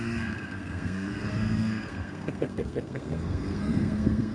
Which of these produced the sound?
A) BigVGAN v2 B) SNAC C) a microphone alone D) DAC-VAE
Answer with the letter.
B